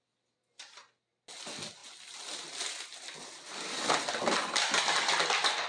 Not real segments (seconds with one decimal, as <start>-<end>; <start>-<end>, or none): none